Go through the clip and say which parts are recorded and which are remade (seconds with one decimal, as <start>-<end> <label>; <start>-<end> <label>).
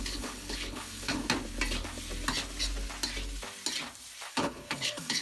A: 0.0-1.2 remade; 1.2-4.3 recorded; 4.3-5.2 remade